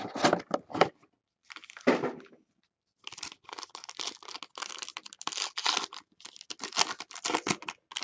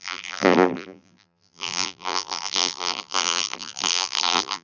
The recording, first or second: first